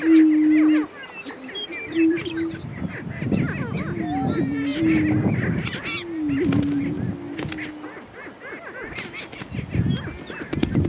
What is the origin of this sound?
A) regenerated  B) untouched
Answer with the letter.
B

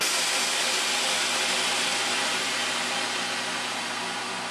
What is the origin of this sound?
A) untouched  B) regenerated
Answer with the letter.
A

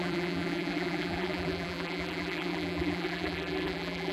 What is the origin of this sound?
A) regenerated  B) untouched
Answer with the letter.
A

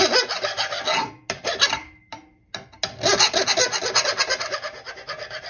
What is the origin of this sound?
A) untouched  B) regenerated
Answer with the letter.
A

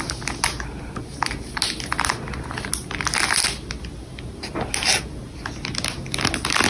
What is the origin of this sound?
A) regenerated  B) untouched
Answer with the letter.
B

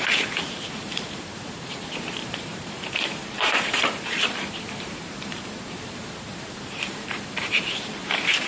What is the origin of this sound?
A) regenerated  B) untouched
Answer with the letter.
A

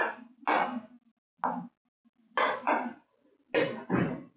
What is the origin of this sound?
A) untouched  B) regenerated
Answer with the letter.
A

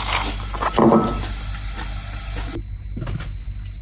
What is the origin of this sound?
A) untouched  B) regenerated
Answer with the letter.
A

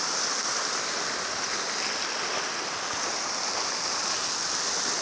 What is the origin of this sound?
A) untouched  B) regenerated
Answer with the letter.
A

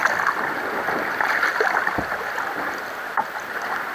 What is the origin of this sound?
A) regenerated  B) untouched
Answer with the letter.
B